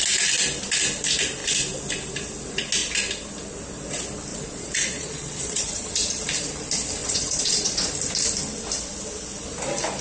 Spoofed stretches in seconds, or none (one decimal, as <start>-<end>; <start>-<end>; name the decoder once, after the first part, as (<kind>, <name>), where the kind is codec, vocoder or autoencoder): 4.3-5.9 (vocoder, Vocos); 7.0-7.9